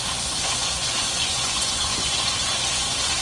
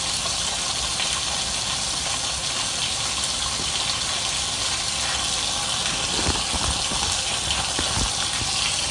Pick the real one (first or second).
second